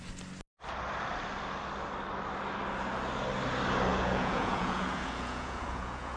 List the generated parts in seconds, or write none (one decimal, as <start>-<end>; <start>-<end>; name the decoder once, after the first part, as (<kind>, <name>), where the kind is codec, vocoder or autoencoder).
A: 3.9-6.2 (vocoder, Vocos)